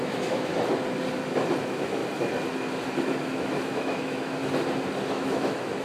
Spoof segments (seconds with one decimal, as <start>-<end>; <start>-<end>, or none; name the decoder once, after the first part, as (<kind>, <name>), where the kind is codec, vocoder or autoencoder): 0.0-0.5 (autoencoder, DAC-VAE); 1.6-2.0; 3.0-4.4; 5.1-5.8